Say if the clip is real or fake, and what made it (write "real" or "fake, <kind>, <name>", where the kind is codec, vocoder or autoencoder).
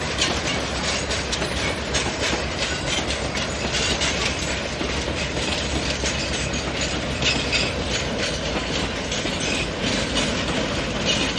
real